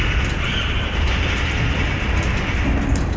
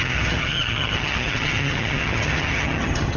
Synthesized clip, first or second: second